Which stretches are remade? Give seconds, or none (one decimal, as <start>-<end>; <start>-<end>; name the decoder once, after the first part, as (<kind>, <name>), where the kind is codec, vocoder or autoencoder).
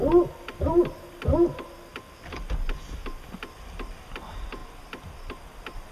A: none